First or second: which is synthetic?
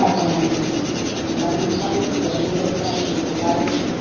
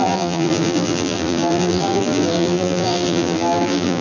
second